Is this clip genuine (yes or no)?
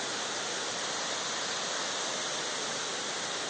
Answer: yes